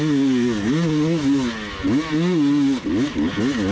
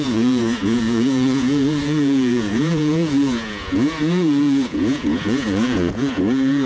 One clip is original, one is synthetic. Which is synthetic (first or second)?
second